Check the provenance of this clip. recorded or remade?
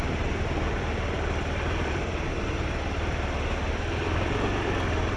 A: remade